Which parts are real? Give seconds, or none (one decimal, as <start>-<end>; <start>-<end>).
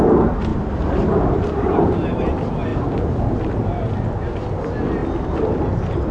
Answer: 0.0-0.5; 2.2-2.7; 3.9-6.1